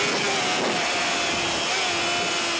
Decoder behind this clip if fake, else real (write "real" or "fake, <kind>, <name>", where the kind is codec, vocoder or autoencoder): real